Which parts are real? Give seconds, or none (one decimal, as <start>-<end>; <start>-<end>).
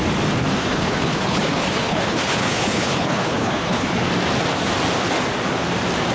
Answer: 0.0-0.6; 4.1-6.1